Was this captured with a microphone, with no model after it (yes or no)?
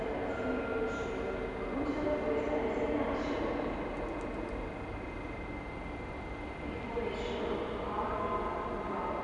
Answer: yes